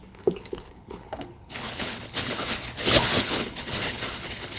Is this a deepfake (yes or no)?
yes